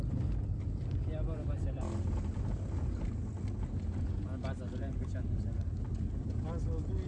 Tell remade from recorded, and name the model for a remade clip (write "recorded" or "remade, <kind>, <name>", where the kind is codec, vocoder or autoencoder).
recorded